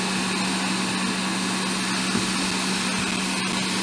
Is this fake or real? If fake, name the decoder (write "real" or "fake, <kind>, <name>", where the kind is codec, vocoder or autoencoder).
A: real